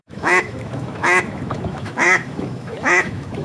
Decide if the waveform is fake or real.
fake